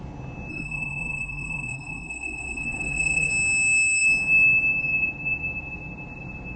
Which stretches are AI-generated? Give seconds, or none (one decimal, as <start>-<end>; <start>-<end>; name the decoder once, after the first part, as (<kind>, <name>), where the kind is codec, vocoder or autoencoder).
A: 0.5-3.3 (codec, SNAC)